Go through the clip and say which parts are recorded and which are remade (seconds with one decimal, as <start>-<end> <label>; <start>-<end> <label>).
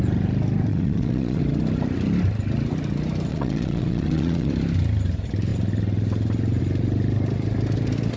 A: 0.0-0.7 recorded; 0.7-1.4 remade; 1.4-3.3 recorded; 3.3-4.5 remade; 4.5-8.2 recorded